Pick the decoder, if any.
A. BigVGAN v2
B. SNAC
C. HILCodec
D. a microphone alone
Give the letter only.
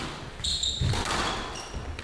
D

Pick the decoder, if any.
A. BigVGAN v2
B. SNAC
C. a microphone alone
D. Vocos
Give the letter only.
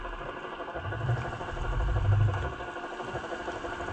C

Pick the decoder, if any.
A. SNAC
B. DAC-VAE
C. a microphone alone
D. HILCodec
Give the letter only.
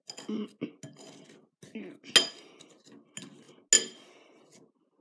C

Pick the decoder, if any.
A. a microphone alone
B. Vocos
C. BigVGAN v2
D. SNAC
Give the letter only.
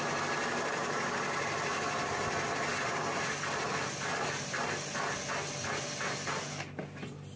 A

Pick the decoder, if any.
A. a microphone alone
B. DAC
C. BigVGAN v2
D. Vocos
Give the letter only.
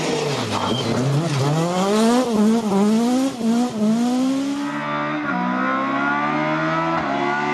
A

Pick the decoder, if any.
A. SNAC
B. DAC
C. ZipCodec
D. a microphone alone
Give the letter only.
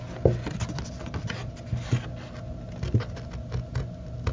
D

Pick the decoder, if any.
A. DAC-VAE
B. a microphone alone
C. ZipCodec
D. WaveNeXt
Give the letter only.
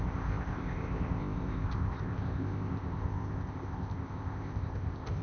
C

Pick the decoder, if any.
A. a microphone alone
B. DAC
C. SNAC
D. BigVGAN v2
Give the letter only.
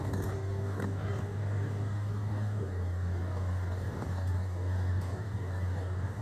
B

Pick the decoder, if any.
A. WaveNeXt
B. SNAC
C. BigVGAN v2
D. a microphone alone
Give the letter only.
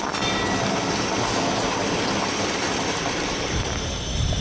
D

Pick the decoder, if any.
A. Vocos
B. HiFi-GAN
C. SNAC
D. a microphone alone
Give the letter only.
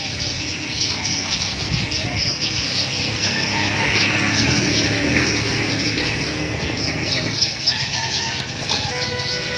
C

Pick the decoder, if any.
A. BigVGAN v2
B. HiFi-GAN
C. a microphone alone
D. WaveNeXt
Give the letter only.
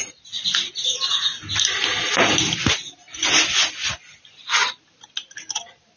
C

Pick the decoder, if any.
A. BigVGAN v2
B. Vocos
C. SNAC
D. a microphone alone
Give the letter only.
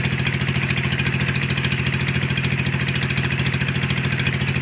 D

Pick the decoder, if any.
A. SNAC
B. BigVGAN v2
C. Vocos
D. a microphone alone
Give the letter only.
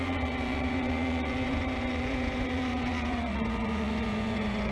C